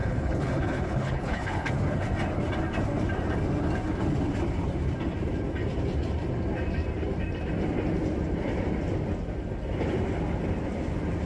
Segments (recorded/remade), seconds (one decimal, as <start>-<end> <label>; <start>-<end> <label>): 0.0-1.7 remade; 1.7-11.3 recorded